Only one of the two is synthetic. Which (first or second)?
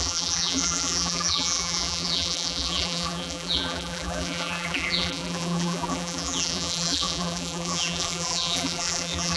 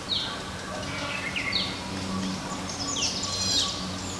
first